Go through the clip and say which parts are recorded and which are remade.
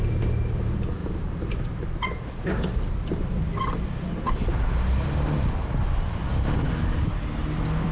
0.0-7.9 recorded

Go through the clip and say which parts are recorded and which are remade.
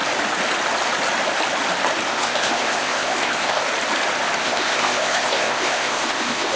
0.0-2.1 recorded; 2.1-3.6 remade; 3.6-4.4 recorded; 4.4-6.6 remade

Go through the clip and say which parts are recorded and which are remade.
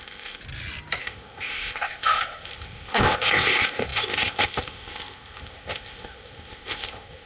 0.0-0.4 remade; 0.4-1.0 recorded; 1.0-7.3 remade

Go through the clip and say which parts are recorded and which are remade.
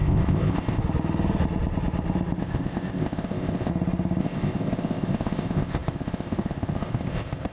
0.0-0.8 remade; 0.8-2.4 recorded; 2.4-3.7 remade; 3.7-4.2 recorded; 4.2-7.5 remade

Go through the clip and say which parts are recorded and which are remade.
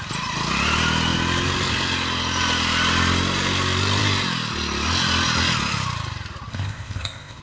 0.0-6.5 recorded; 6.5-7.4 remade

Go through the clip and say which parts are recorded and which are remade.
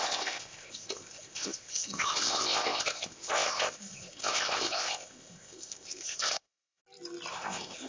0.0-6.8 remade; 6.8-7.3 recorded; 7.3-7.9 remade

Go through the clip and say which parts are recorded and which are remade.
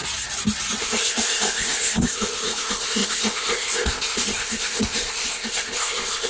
0.0-0.8 recorded; 0.8-6.3 remade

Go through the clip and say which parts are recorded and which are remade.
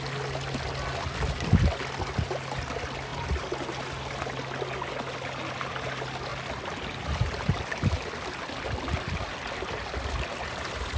0.0-11.0 recorded